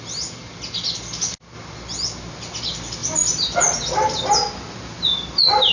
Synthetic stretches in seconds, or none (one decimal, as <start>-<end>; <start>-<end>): 3.0-3.7